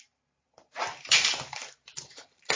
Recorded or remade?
remade